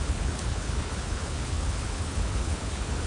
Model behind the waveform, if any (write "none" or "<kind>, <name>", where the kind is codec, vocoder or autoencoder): codec, HILCodec